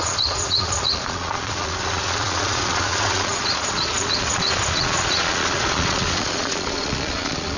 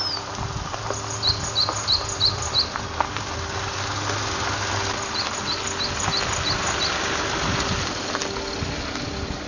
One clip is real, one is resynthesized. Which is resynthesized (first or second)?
first